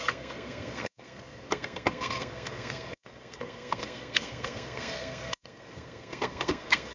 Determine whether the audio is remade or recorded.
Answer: remade